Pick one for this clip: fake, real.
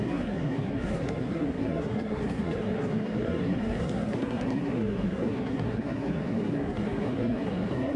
fake